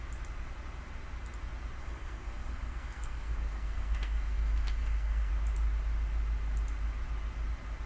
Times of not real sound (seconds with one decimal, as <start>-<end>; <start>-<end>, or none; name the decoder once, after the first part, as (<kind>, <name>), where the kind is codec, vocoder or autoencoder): 1.8-5.3 (codec, SNAC)